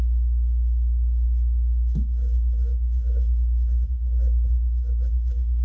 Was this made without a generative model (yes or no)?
no